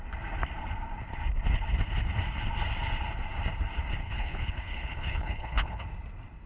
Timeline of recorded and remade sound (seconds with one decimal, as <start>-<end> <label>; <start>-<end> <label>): 0.0-4.0 recorded; 4.0-5.8 remade; 5.8-6.5 recorded